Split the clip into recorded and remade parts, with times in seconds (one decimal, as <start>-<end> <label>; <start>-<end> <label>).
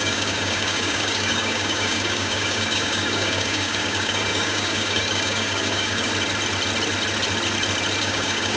0.0-6.1 remade; 6.1-8.0 recorded; 8.0-8.6 remade